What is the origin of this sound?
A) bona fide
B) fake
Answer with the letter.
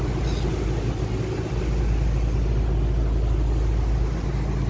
A